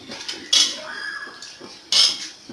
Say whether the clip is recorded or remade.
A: recorded